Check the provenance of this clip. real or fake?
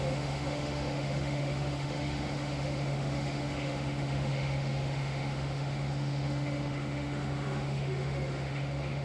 fake